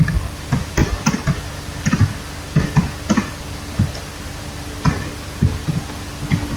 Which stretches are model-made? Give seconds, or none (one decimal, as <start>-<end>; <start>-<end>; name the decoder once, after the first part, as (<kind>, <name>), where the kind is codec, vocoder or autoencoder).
0.8-1.4 (vocoder, BigVGAN v2); 2.8-3.4

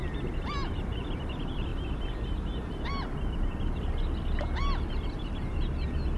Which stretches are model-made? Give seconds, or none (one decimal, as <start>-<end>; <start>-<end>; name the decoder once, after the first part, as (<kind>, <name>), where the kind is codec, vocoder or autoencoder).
0.0-1.7 (vocoder, BigVGAN v2); 4.9-6.2

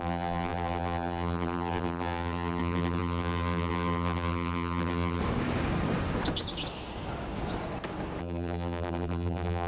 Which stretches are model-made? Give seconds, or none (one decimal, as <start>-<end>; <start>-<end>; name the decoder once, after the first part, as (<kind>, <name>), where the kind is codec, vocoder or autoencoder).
0.0-5.2 (vocoder, BigVGAN v2); 8.2-9.7